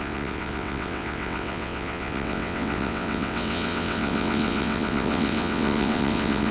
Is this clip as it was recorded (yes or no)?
no